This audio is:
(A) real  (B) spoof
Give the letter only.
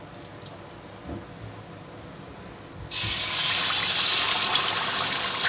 A